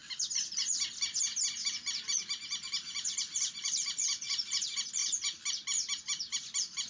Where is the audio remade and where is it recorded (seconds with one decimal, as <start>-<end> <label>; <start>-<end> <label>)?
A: 0.0-2.6 recorded; 2.6-5.0 remade; 5.0-6.0 recorded; 6.0-6.9 remade